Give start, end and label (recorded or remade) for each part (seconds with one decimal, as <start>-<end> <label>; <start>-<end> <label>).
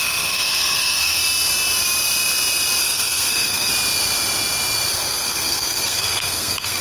0.0-1.2 remade; 1.2-2.8 recorded; 2.8-3.7 remade; 3.7-4.9 recorded; 4.9-6.8 remade